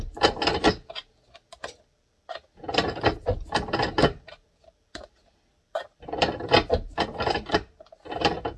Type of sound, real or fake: real